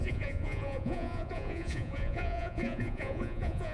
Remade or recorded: remade